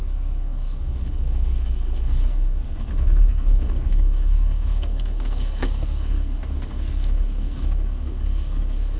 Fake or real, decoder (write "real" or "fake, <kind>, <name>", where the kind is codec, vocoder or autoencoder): fake, codec, SNAC